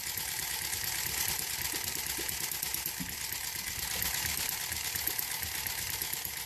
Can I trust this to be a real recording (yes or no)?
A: yes